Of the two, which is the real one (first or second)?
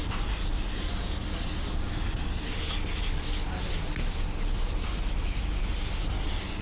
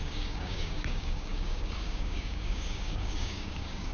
first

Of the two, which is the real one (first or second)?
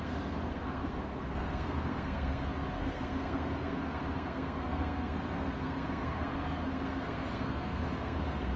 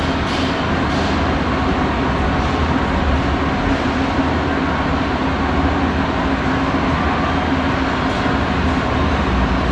second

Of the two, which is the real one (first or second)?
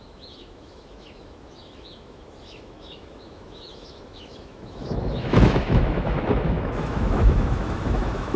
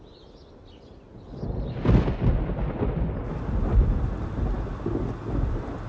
second